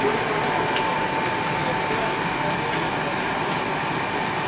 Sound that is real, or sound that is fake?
real